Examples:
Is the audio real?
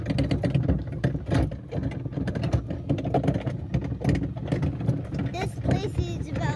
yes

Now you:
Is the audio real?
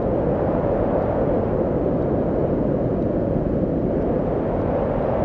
yes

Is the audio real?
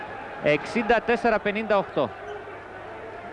yes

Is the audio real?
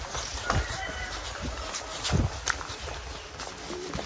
yes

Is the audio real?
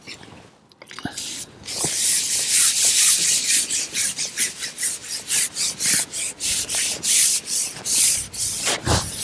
yes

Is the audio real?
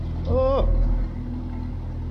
yes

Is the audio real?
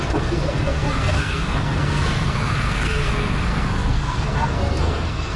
no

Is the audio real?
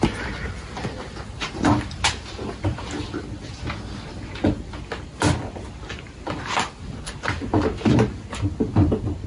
yes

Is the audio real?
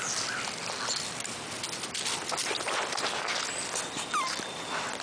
yes